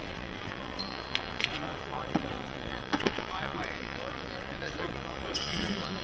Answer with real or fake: fake